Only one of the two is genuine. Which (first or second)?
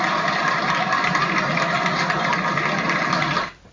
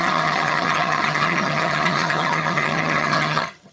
first